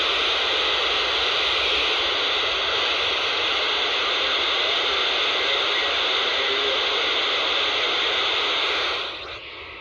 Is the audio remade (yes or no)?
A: no